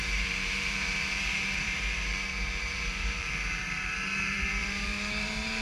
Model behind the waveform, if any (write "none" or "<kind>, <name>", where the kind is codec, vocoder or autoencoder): vocoder, BigVGAN v2